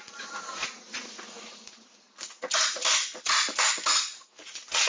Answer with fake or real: fake